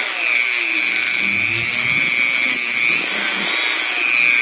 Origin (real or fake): real